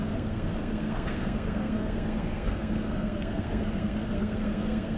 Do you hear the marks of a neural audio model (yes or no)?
yes